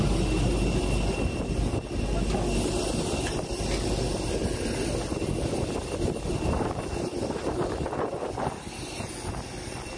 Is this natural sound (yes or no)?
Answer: yes